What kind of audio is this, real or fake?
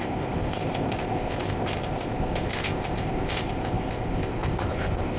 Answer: fake